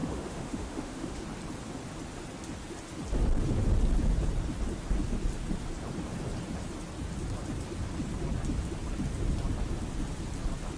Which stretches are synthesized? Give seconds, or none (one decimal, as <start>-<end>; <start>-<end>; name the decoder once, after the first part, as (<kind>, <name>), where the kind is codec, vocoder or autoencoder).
0.0-1.2 (autoencoder, DAC-VAE)